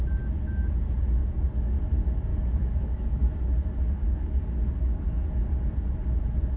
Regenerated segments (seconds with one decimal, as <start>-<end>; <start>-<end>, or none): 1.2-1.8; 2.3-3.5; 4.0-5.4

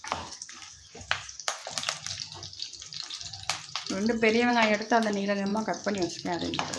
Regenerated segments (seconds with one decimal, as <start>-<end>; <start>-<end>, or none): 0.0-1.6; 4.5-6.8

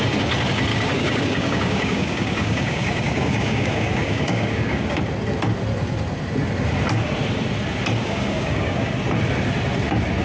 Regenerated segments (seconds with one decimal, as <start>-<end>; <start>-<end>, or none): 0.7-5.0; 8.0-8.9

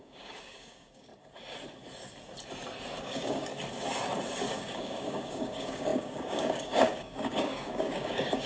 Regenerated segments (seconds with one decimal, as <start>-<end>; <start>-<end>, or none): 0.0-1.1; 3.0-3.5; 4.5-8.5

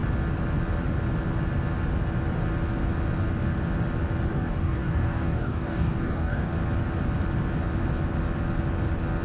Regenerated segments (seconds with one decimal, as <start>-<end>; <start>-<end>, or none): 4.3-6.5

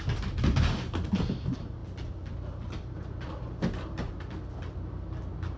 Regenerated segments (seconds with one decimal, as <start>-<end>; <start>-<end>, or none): none

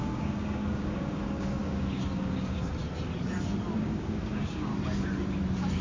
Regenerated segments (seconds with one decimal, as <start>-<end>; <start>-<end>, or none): 0.0-2.8; 3.8-4.7

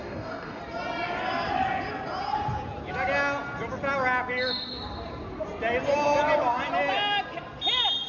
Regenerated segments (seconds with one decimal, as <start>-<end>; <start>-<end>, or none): 0.0-0.6